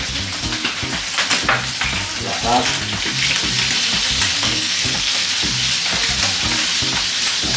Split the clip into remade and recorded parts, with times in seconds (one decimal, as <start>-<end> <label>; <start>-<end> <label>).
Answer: 0.0-4.4 recorded; 4.4-5.3 remade; 5.3-7.6 recorded

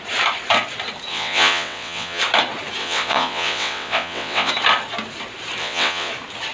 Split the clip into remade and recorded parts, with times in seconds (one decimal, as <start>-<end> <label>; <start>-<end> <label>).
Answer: 0.0-1.1 recorded; 1.1-2.2 remade; 2.2-2.8 recorded; 2.8-4.5 remade; 4.5-5.6 recorded; 5.6-6.1 remade; 6.1-6.5 recorded

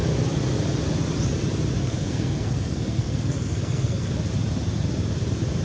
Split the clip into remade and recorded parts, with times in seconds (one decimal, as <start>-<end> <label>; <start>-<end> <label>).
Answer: 0.0-1.8 recorded; 1.8-4.1 remade; 4.1-5.6 recorded

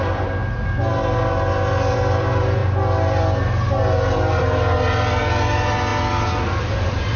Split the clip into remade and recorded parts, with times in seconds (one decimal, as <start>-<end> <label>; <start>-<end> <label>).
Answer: 0.0-7.2 recorded

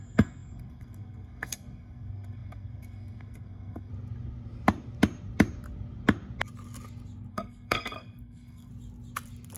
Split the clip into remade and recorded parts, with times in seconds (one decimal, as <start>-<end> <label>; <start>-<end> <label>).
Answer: 0.0-3.9 remade; 3.9-7.3 recorded; 7.3-8.7 remade; 8.7-9.6 recorded

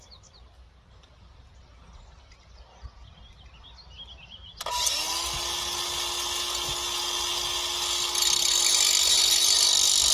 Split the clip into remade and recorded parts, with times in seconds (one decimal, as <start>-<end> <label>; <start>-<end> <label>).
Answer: 0.0-10.1 recorded

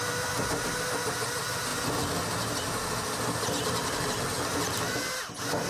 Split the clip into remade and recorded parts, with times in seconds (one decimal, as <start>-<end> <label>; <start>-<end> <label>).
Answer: 0.0-5.7 recorded